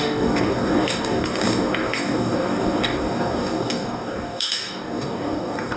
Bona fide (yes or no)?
no